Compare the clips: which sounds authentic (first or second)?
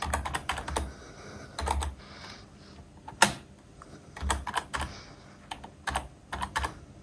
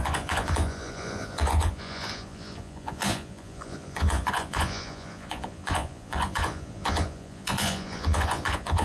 first